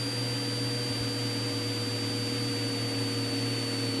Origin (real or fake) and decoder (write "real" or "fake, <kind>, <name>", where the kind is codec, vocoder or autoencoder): real